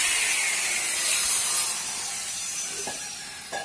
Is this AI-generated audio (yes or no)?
no